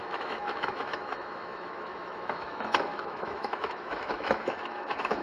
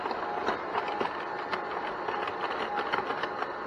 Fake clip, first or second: first